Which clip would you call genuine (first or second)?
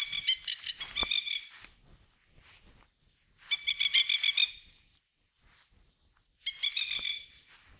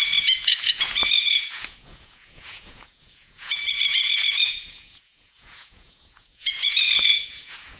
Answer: first